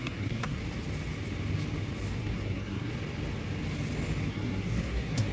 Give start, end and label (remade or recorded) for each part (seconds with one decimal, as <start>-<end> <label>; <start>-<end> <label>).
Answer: 0.0-0.6 remade; 0.6-2.2 recorded; 2.2-2.9 remade; 2.9-4.3 recorded; 4.3-5.3 remade